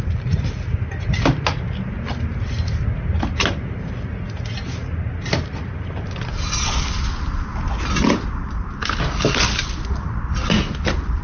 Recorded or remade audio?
recorded